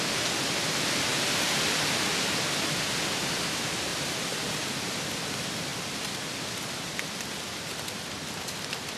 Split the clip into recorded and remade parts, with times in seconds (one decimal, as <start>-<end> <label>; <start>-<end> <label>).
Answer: 0.0-3.9 recorded; 3.9-4.8 remade; 4.8-9.0 recorded